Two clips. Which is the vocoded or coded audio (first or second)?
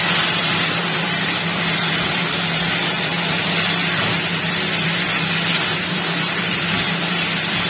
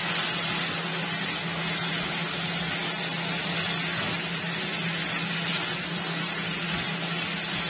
first